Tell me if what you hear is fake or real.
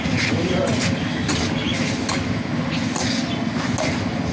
real